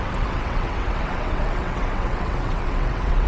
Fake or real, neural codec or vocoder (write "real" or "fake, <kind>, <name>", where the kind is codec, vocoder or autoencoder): fake, vocoder, WaveNeXt